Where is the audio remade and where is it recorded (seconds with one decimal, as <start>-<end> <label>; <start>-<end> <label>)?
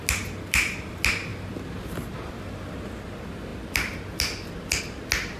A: 0.0-5.4 recorded